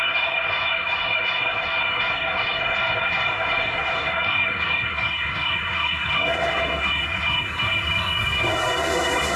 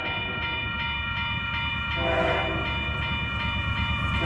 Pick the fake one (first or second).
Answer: first